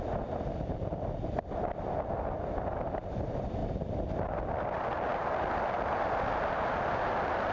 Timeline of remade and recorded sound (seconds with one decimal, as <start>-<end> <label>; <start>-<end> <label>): 0.0-7.5 recorded